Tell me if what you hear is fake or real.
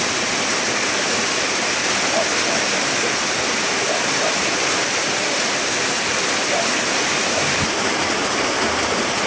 fake